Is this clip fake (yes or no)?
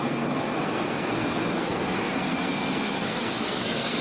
yes